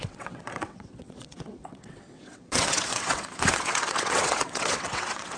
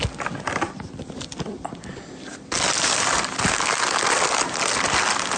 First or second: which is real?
second